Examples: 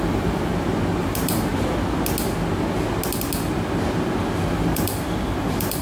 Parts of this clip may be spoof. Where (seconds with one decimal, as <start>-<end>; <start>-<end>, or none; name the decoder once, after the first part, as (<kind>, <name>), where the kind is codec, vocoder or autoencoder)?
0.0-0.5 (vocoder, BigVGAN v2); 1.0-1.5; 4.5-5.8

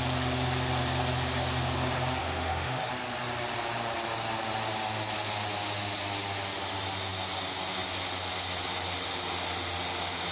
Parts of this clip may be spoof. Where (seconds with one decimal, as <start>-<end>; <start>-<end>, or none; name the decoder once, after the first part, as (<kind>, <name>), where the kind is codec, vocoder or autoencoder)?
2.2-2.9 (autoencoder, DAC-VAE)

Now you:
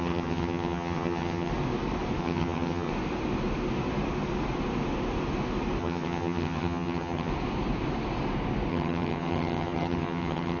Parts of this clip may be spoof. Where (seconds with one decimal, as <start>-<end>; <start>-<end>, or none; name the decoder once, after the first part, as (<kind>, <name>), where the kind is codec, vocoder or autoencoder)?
0.0-1.5 (vocoder, HiFi-GAN); 2.2-2.9; 5.8-7.3; 8.7-10.6

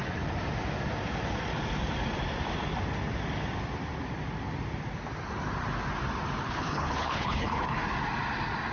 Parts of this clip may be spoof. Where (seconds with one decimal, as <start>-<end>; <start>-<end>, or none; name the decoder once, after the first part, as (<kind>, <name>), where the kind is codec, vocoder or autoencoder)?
6.4-7.8 (codec, HILCodec)